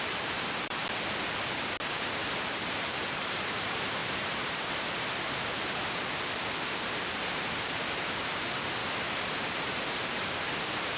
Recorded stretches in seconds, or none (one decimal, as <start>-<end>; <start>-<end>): 0.8-2.5; 8.8-9.9